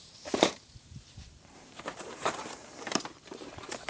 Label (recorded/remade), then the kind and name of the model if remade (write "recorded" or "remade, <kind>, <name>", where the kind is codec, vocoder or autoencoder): remade, vocoder, BigVGAN v2